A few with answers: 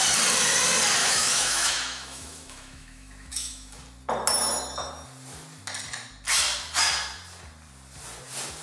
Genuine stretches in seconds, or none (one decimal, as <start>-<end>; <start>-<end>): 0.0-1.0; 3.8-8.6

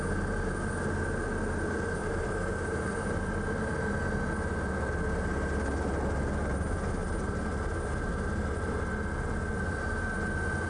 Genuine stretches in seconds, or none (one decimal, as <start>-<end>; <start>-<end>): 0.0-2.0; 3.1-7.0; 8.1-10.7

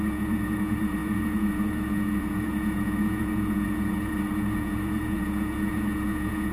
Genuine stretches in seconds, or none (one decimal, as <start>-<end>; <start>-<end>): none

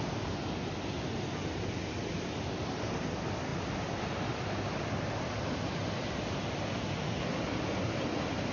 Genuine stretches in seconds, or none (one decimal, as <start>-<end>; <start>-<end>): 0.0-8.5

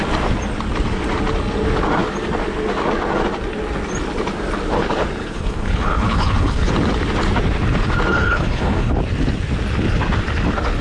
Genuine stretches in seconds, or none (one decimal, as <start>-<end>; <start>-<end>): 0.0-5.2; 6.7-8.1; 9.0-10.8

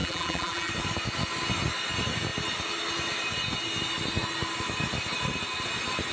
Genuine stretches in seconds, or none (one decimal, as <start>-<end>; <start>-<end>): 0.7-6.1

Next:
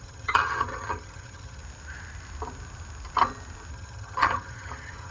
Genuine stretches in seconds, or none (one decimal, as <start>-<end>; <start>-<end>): 1.6-3.7

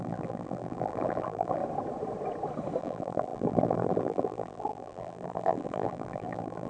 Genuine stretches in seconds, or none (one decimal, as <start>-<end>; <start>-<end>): 1.6-2.8